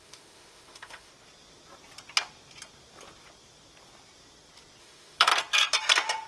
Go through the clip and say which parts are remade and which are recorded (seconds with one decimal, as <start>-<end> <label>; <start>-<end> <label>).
0.0-1.1 remade; 1.1-4.8 recorded; 4.8-5.3 remade; 5.3-6.3 recorded